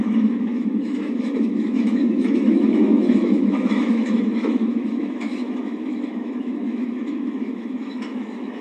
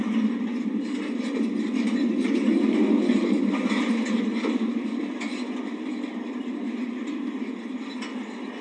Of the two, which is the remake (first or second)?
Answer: first